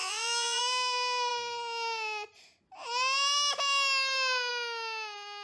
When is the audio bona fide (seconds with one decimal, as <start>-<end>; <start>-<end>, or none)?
0.6-5.4